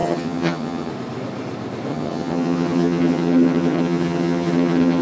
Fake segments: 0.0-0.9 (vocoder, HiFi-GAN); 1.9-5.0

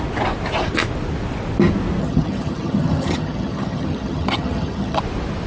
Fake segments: 2.0-5.0 (vocoder, HiFi-GAN)

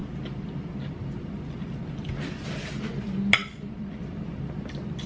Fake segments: none

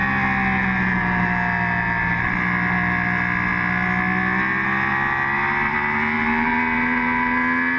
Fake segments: none

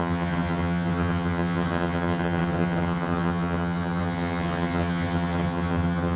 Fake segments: 0.0-6.2 (vocoder, HiFi-GAN)

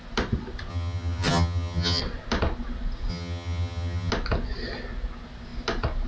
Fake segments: 0.7-2.0 (vocoder, HiFi-GAN); 3.1-4.1

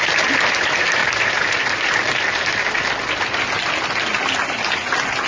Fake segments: none

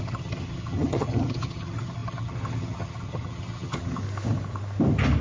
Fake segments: 0.0-4.0 (vocoder, HiFi-GAN)